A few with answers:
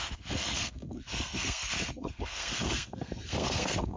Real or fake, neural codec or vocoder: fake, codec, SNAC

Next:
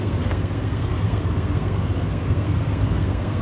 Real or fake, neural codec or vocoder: fake, codec, SNAC